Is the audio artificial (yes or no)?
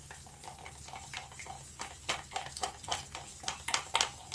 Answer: no